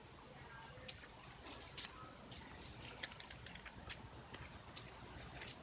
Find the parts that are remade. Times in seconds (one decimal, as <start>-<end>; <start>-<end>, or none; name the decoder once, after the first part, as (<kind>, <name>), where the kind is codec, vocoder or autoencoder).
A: none